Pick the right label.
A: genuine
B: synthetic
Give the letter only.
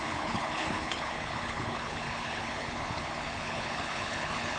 B